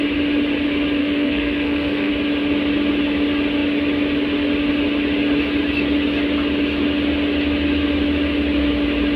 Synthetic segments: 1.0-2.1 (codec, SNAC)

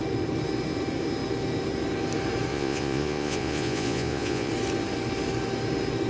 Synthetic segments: 2.5-4.5 (vocoder, Vocos)

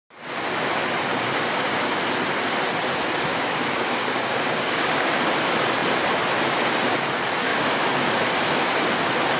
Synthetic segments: 1.1-2.0 (codec, DAC); 3.3-5.0; 7.5-8.1